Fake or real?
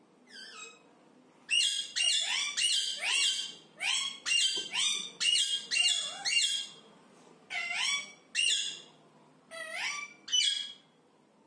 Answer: real